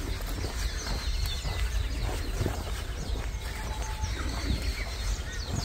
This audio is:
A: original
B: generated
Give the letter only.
A